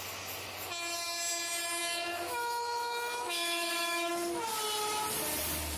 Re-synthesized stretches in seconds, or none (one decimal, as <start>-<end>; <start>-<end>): 1.8-4.1

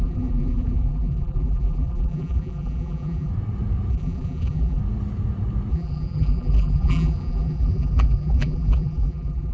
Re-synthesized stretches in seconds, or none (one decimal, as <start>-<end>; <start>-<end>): 0.0-3.3; 3.9-4.8; 5.7-9.5

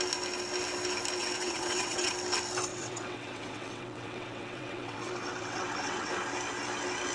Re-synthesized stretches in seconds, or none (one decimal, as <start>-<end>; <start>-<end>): 1.2-2.1; 2.7-6.1

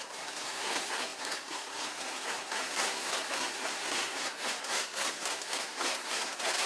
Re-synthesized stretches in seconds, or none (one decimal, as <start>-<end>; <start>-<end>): 0.0-6.7

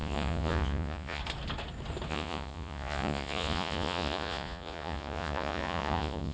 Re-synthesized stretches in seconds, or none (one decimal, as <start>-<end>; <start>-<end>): 0.0-1.2; 2.1-6.3

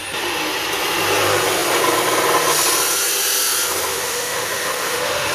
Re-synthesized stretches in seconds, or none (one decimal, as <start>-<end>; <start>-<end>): 3.9-5.3